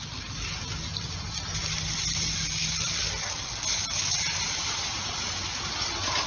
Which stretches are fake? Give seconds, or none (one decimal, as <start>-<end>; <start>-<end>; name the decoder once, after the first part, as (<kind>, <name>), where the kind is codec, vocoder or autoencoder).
none